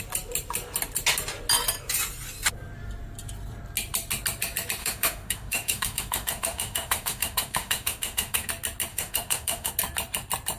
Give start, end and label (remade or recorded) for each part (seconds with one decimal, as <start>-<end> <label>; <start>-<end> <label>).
0.0-4.8 recorded; 4.8-8.5 remade; 8.5-8.9 recorded; 8.9-9.7 remade; 9.7-10.6 recorded